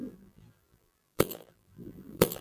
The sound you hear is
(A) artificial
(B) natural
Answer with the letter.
A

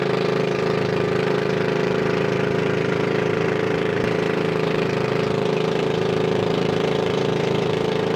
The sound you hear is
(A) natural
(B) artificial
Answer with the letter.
B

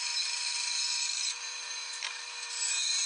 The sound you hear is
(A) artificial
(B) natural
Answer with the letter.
A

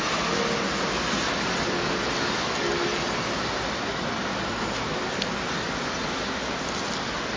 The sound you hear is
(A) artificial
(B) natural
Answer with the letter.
B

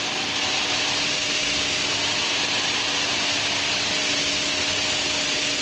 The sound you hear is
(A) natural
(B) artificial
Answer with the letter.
A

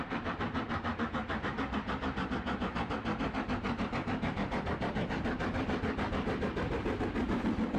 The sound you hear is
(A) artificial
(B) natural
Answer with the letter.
B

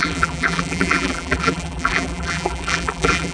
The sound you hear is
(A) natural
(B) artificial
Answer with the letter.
B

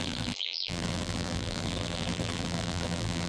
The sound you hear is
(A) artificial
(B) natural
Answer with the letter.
A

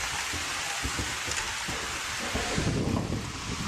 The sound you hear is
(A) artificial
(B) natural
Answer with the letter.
A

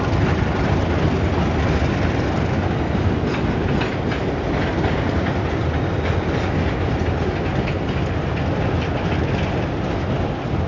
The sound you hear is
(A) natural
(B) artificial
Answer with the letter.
A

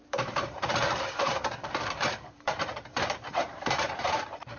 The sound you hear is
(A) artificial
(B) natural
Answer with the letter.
A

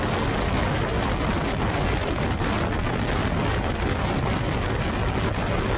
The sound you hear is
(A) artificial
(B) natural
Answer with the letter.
B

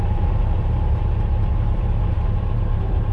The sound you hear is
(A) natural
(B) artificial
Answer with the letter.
B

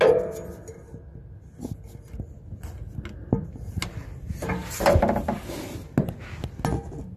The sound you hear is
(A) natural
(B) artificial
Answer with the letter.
A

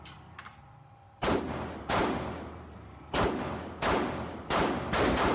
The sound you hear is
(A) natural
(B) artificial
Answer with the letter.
B